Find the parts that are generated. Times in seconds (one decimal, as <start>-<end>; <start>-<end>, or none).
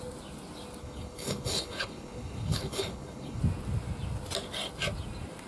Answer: 0.8-3.4